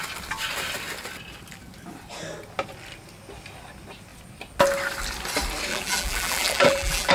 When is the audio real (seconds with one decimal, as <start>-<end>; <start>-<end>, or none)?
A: 0.0-5.7